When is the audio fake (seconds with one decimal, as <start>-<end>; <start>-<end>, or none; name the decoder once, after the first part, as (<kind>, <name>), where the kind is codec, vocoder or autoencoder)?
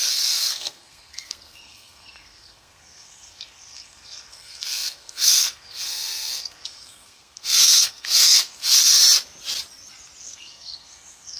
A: 0.0-9.0 (codec, SNAC); 10.2-11.4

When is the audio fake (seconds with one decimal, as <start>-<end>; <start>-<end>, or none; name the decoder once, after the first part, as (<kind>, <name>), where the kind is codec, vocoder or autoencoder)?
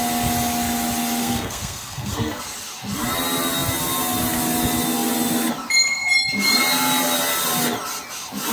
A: 1.2-2.4 (codec, SNAC)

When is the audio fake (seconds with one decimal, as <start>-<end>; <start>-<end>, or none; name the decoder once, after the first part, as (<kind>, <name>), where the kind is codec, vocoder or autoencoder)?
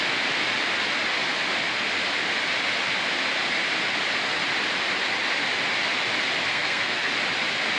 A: 6.5-7.1 (codec, SNAC)